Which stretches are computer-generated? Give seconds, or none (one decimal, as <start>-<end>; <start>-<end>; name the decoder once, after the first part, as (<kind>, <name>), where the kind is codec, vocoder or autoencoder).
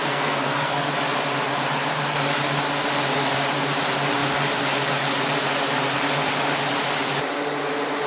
0.0-0.9 (codec, SNAC)